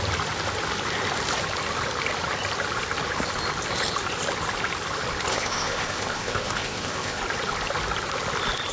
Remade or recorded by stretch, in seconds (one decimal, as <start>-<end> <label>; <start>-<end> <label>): 0.0-5.3 recorded; 5.3-7.2 remade; 7.2-8.7 recorded